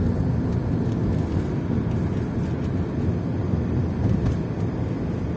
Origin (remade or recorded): recorded